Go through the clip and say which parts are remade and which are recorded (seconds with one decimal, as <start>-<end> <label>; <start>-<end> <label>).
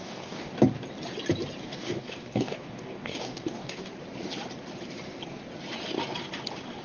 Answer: 0.0-0.5 remade; 0.5-1.6 recorded; 1.6-3.9 remade; 3.9-6.8 recorded